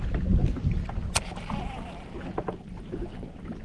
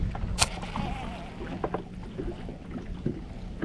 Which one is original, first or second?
second